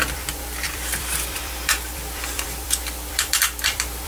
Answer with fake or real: fake